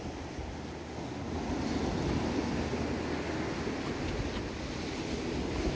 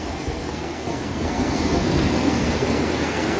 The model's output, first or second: second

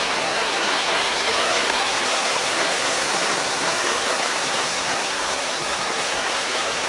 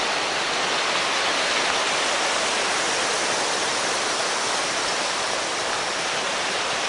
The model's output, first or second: first